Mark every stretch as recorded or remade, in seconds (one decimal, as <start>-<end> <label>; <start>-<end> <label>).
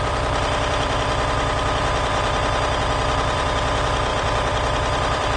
0.0-2.1 remade; 2.1-2.8 recorded; 2.8-5.4 remade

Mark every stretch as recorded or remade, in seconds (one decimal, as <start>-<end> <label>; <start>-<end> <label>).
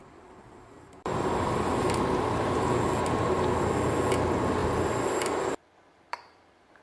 0.0-1.8 remade; 1.8-4.6 recorded; 4.6-6.8 remade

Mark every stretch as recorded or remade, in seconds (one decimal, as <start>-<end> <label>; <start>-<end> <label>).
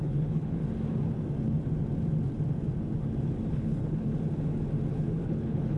0.0-0.6 remade; 0.6-3.5 recorded; 3.5-4.1 remade; 4.1-4.9 recorded; 4.9-5.8 remade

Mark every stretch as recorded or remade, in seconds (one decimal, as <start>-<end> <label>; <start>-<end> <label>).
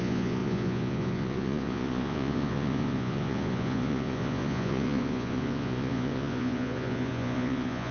0.0-7.9 remade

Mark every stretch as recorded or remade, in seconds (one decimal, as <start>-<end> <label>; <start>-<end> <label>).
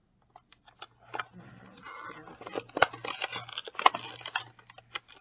0.0-5.2 recorded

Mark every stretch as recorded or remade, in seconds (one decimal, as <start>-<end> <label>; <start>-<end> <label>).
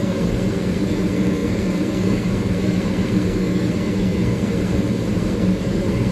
0.0-6.1 remade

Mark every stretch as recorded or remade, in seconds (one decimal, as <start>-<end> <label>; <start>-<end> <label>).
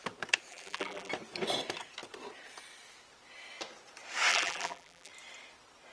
0.0-0.5 recorded; 0.5-1.1 remade; 1.1-4.3 recorded; 4.3-5.1 remade; 5.1-5.9 recorded